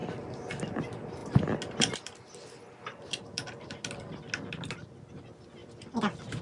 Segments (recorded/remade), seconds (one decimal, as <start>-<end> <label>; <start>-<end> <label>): 0.0-6.4 recorded